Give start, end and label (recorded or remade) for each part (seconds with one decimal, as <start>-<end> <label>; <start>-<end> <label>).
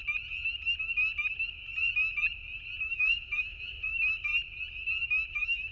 0.0-2.8 recorded; 2.8-4.3 remade; 4.3-5.3 recorded; 5.3-5.7 remade